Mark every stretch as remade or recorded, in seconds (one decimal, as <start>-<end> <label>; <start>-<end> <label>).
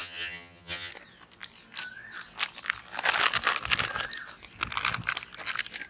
0.0-0.9 remade; 0.9-5.9 recorded